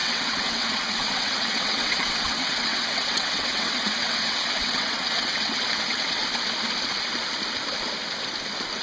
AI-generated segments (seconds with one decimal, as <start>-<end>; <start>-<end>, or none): 0.0-6.2